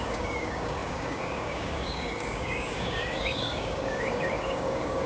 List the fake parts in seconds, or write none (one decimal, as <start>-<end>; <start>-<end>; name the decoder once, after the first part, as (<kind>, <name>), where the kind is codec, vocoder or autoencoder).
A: 0.0-5.1 (codec, DAC)